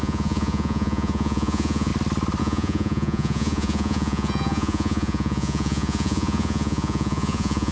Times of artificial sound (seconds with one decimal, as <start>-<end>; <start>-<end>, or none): 0.0-1.9; 2.4-7.7

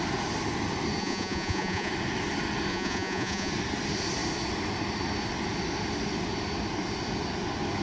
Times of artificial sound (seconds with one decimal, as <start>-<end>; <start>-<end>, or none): 1.0-1.9; 2.7-3.5

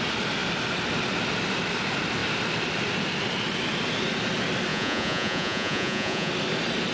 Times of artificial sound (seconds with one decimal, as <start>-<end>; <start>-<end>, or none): 4.7-6.3

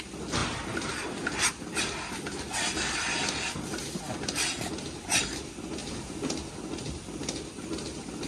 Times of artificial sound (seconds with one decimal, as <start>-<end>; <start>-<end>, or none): none